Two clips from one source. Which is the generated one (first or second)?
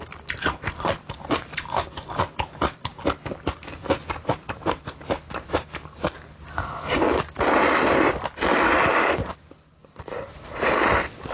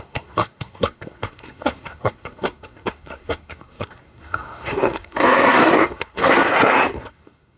second